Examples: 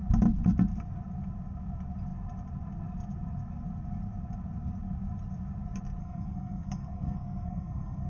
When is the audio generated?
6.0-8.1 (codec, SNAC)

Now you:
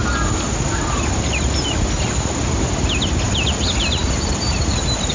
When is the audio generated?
none

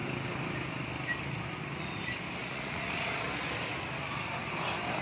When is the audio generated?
2.4-3.1 (vocoder, Vocos)